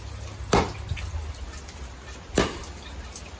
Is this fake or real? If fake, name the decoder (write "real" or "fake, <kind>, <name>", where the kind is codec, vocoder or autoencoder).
real